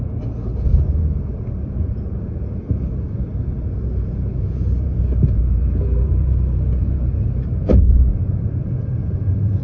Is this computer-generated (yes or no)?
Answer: yes